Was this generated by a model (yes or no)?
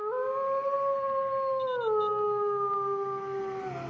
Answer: no